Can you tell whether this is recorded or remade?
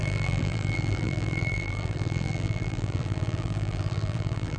remade